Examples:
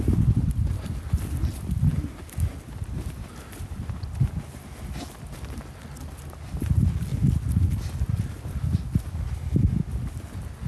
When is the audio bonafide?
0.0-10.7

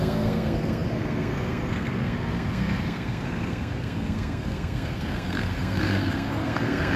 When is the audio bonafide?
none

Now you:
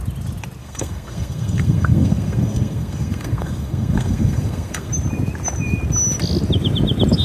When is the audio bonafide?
0.0-0.6; 4.9-7.2

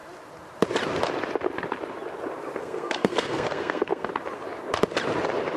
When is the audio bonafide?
0.0-2.6; 4.1-5.6

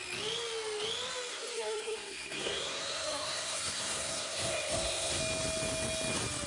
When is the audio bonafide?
0.0-1.3; 5.2-6.5